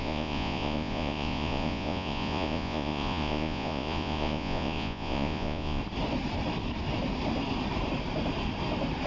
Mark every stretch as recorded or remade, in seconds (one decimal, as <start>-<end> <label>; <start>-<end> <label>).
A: 0.0-5.8 remade; 5.8-9.1 recorded